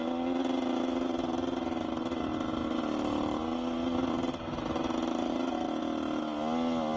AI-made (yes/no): no